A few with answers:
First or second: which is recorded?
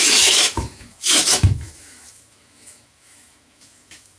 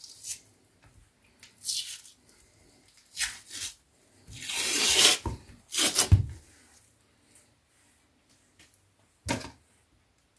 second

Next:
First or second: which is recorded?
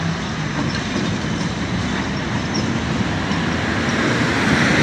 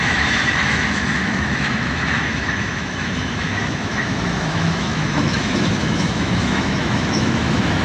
first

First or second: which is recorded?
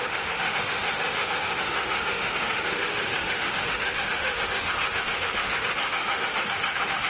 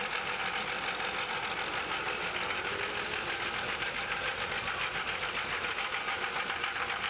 second